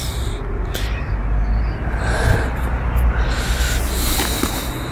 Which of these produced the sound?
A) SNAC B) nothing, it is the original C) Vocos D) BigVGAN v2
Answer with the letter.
B